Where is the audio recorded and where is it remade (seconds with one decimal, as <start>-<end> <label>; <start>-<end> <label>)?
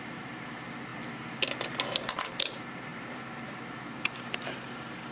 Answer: 0.0-0.9 remade; 0.9-2.4 recorded; 2.4-5.1 remade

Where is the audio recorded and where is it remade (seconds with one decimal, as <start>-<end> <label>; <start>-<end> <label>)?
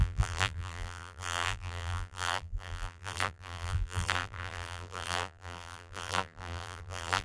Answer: 0.0-7.2 remade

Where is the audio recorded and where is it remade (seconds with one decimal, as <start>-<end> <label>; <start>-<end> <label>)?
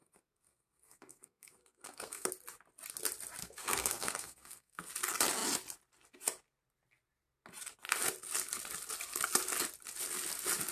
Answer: 0.0-2.3 remade; 2.3-3.4 recorded; 3.4-4.9 remade; 4.9-10.7 recorded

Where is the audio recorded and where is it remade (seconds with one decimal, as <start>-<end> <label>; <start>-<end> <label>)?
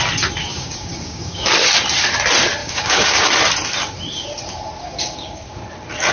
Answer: 0.0-0.5 recorded; 0.5-1.5 remade; 1.5-2.6 recorded; 2.6-3.3 remade; 3.3-4.8 recorded; 4.8-5.6 remade; 5.6-6.1 recorded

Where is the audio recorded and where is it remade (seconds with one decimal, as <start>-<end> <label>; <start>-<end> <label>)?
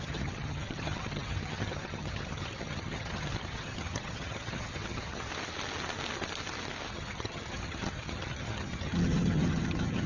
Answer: 0.0-5.3 remade; 5.3-6.9 recorded; 6.9-10.1 remade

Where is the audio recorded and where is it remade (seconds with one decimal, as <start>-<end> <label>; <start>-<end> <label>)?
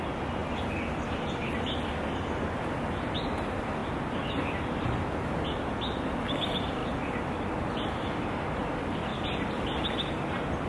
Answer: 0.0-10.7 recorded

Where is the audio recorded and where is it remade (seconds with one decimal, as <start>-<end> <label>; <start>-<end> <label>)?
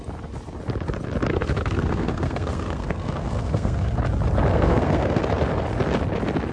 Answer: 0.0-1.3 recorded; 1.3-4.0 remade; 4.0-4.5 recorded; 4.5-5.2 remade; 5.2-6.5 recorded